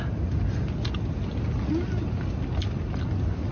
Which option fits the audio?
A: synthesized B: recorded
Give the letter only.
B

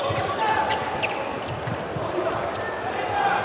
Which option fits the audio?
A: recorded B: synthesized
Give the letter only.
A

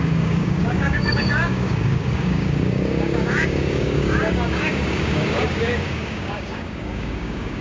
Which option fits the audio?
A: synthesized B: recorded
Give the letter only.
A